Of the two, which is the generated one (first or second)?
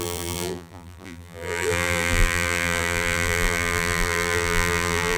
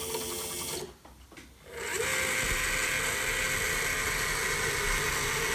first